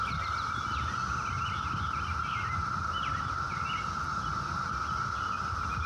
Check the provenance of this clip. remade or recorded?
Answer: recorded